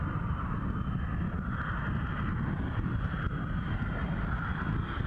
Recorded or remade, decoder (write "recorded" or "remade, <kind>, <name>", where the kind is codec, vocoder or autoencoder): recorded